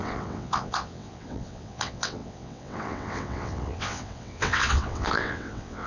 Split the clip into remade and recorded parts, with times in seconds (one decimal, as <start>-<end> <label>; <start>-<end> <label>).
0.0-5.9 remade